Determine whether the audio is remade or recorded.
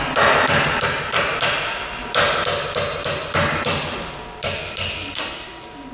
recorded